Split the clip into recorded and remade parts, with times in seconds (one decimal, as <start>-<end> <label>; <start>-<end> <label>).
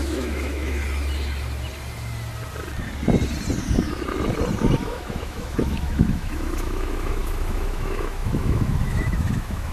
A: 0.0-0.8 remade; 0.8-4.8 recorded; 4.8-9.7 remade